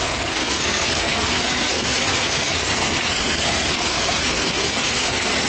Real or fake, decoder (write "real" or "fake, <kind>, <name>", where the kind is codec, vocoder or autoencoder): fake, codec, SNAC